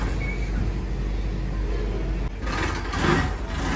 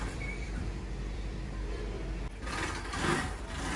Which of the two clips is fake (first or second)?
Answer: second